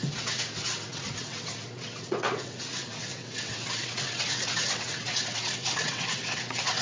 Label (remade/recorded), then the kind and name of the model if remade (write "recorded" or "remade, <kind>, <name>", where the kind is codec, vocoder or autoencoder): remade, vocoder, WaveNeXt